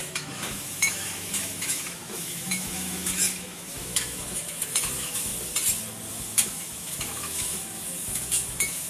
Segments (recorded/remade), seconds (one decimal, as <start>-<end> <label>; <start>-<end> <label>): 0.0-5.3 remade; 5.3-6.1 recorded; 6.1-8.9 remade